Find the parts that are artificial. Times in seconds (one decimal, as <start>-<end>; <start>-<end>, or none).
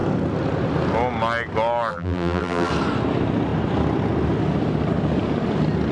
1.9-2.7